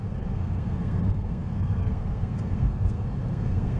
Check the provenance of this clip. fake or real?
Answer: fake